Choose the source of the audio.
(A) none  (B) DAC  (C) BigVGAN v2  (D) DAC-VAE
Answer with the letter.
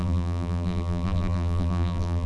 C